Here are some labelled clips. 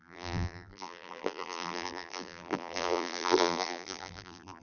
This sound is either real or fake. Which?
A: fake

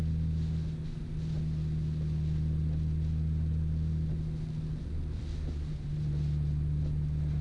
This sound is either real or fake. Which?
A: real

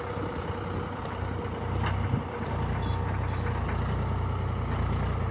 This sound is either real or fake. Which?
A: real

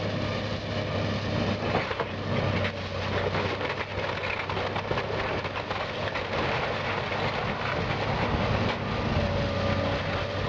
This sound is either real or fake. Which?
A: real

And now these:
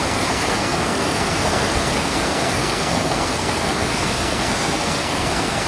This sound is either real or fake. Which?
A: fake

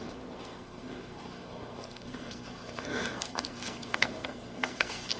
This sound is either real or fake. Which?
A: fake